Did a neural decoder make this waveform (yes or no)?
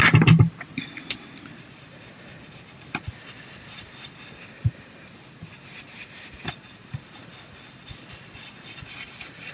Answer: no